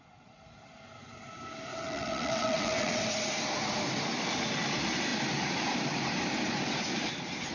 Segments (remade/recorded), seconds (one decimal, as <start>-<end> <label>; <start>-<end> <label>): 0.0-1.7 recorded; 1.7-3.0 remade; 3.0-7.5 recorded